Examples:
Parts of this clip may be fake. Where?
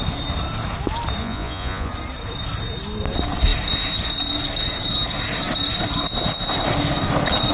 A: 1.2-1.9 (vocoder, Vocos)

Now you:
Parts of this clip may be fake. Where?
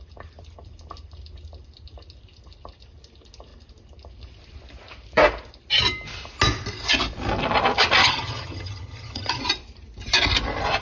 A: 8.0-9.4 (vocoder, HiFi-GAN)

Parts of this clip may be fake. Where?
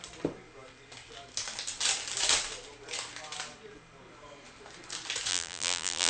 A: 5.3-6.1 (vocoder, BigVGAN v2)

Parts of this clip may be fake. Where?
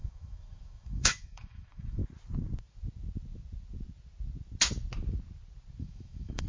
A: 0.0-2.0 (autoencoder, DAC-VAE); 5.8-6.5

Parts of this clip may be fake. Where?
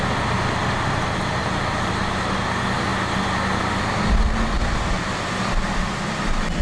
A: none